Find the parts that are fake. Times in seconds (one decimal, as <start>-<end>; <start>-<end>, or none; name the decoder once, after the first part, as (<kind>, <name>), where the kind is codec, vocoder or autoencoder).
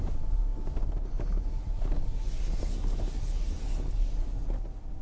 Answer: none